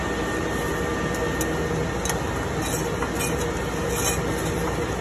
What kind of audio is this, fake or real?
real